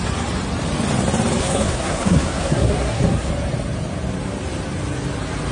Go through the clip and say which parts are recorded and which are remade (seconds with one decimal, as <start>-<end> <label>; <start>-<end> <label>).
0.0-1.4 recorded; 1.4-3.3 remade; 3.3-5.5 recorded